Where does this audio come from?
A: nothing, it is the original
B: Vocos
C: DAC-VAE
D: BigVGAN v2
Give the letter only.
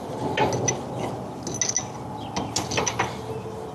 A